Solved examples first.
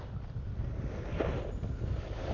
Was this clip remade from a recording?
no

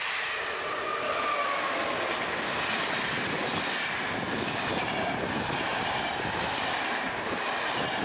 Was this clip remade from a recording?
no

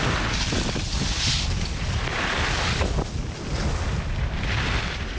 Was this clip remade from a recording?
no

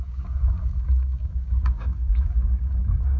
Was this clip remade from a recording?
yes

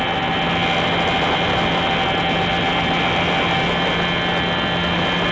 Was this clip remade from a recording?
no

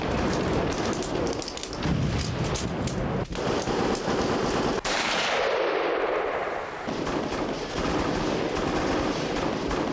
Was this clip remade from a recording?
no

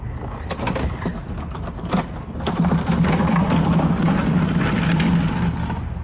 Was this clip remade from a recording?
no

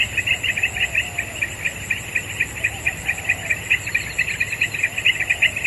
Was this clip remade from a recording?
no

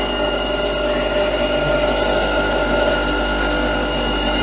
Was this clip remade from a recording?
no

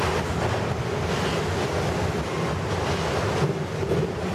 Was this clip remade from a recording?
no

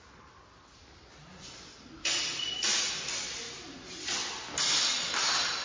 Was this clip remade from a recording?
no